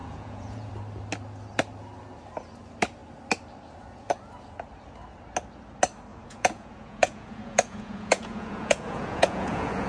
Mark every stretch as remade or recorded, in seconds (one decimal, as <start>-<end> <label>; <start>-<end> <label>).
0.0-0.7 remade; 0.7-6.1 recorded; 6.1-9.9 remade